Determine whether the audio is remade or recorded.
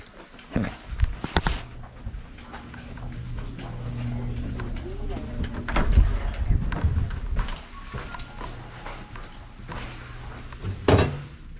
recorded